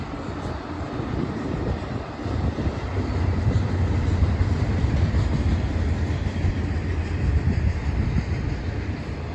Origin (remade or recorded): remade